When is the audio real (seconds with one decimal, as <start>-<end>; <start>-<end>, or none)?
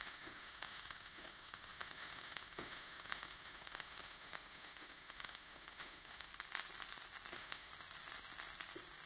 6.3-7.3; 7.7-9.1